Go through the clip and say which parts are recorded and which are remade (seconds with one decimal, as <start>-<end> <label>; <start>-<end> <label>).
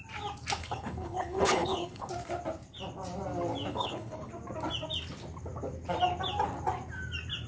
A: 0.0-0.6 recorded; 0.6-2.1 remade; 2.1-3.7 recorded; 3.7-4.3 remade; 4.3-7.5 recorded